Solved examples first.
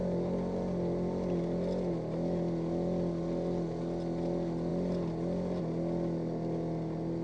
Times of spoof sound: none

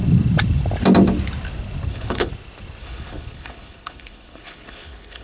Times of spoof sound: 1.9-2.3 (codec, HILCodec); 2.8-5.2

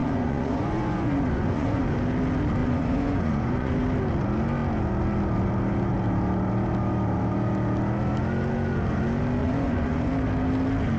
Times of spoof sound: 0.0-1.8 (vocoder, Vocos); 2.6-3.7; 9.4-10.1

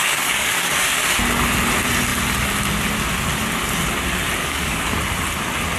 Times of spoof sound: 0.0-0.7 (codec, DAC); 4.4-4.9